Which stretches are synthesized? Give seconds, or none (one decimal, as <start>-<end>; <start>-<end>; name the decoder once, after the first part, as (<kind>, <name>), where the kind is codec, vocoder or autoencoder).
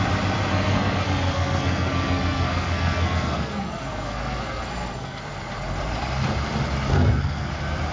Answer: 0.5-5.2 (codec, SNAC); 6.9-7.5